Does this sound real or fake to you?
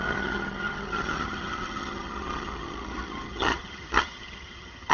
fake